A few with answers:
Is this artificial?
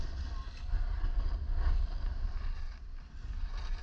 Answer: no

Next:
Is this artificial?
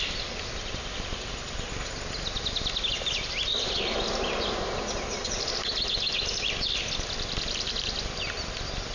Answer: no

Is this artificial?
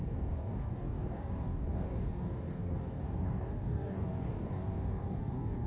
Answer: yes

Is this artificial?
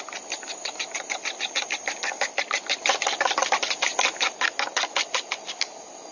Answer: no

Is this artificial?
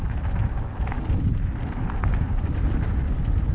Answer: no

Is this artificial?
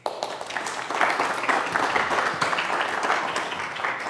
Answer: no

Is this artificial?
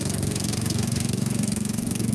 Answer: yes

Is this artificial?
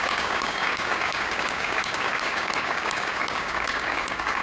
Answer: yes